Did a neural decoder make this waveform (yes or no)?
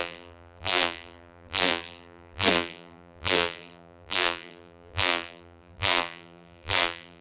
yes